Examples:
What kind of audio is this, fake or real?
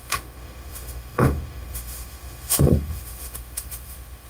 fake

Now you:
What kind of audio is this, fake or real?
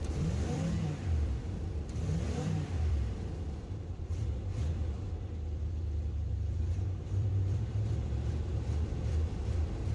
fake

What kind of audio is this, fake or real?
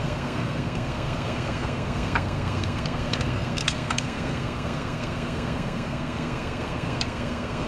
fake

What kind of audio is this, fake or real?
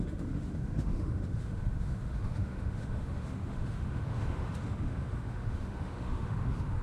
fake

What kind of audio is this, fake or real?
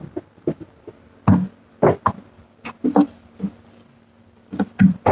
real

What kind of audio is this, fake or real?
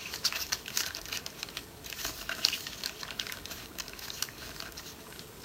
fake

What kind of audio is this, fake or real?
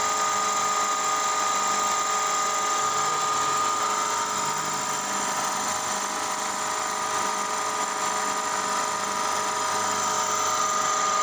real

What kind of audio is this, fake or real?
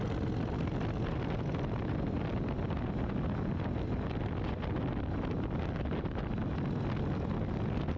real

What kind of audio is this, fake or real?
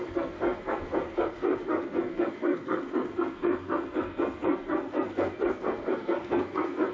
fake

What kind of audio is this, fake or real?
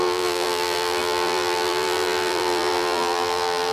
fake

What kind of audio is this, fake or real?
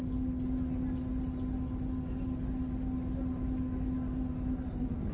real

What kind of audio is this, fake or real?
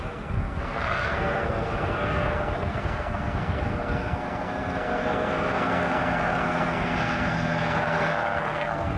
fake